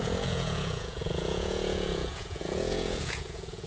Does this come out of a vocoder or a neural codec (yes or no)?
yes